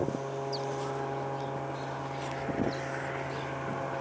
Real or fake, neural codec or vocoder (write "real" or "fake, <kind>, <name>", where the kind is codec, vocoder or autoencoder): real